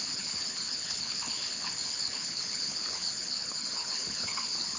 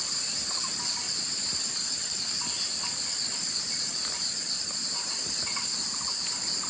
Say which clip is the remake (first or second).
first